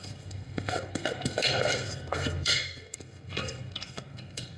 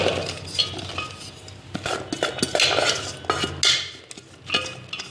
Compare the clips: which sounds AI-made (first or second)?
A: first